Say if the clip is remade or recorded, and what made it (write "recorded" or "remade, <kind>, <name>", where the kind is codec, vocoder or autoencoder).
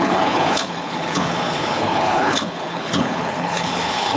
remade, codec, HILCodec